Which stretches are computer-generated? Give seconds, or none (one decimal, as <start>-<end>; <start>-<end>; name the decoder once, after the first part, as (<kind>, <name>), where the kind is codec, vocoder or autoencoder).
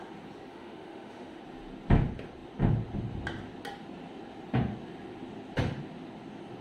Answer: 0.5-1.4 (autoencoder, DAC-VAE)